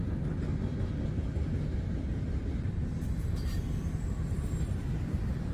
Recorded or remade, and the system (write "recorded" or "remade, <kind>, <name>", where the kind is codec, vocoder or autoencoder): recorded